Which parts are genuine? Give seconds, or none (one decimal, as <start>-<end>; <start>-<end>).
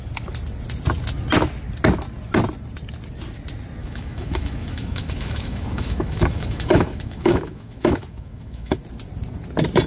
0.0-3.8; 8.8-9.9